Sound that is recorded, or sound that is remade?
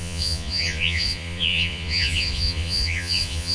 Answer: remade